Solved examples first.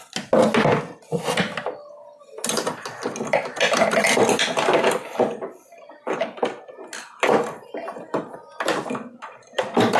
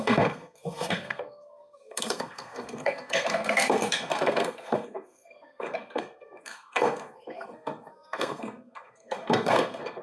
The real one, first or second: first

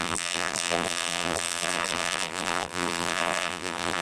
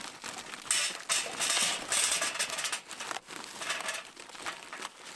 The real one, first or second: second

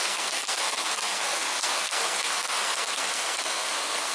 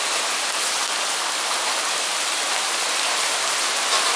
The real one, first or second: second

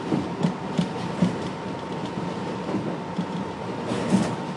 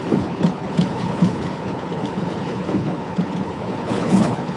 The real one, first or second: first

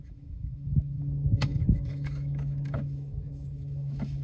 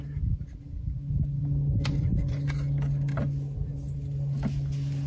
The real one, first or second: second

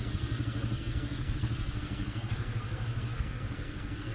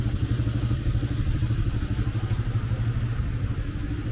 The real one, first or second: second